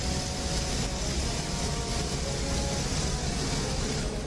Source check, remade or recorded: recorded